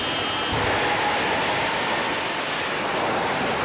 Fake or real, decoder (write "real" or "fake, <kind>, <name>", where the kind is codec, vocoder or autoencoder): real